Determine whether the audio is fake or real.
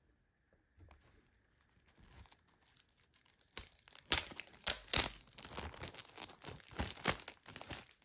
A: real